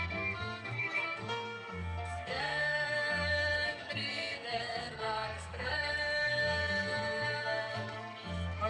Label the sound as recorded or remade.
remade